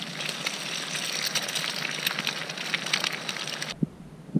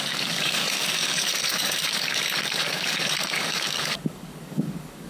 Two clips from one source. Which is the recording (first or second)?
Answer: first